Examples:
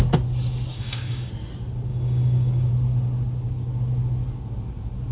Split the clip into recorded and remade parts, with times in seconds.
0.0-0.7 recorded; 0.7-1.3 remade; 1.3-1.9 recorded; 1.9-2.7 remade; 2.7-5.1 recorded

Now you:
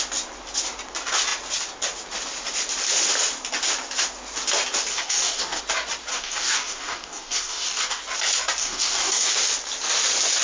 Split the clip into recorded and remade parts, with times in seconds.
0.0-4.9 recorded; 4.9-5.6 remade; 5.6-6.1 recorded; 6.1-8.0 remade; 8.0-8.6 recorded; 8.6-9.3 remade; 9.3-10.4 recorded

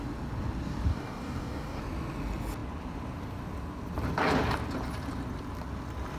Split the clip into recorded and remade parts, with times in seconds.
0.0-0.9 recorded; 0.9-1.8 remade; 1.8-6.2 recorded

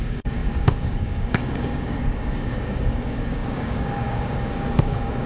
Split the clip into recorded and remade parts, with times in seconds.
0.0-5.3 remade